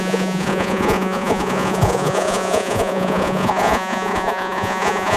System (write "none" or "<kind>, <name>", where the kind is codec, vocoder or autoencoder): vocoder, Vocos